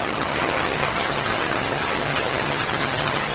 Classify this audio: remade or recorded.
remade